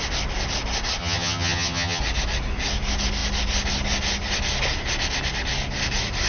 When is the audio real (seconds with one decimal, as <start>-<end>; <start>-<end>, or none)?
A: 0.0-1.0; 2.0-6.3